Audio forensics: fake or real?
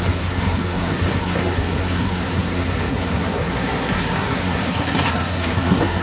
fake